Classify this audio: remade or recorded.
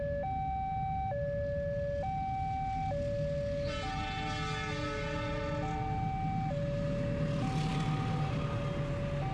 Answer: recorded